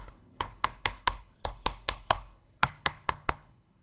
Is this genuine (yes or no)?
no